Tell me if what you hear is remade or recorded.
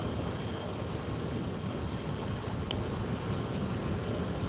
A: recorded